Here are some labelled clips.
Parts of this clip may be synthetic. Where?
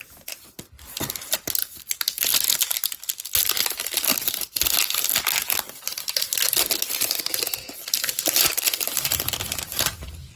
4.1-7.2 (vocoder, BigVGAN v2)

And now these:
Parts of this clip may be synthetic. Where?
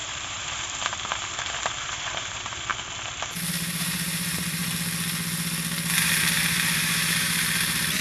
0.0-2.7 (vocoder, BigVGAN v2); 3.5-4.6; 6.2-8.0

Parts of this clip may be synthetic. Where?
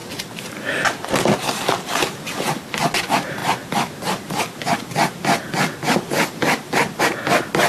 none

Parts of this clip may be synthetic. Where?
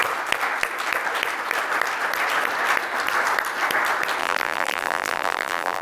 4.2-5.8 (vocoder, BigVGAN v2)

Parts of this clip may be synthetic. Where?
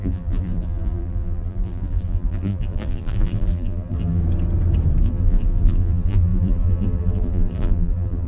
0.0-4.2 (vocoder, BigVGAN v2); 5.0-8.3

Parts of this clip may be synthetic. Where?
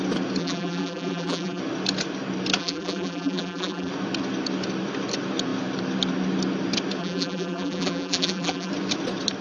0.4-1.6 (vocoder, BigVGAN v2); 2.6-3.9; 7.0-8.7